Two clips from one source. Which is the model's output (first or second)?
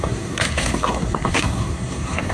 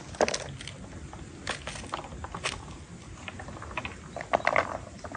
first